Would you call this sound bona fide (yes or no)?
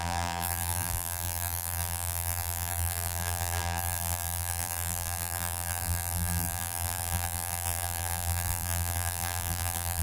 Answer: no